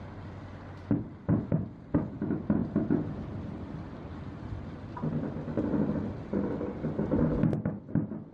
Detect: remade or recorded recorded